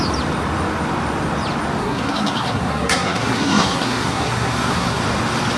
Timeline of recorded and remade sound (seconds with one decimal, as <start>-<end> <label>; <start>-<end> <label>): 0.0-1.8 recorded; 1.8-5.0 remade; 5.0-5.6 recorded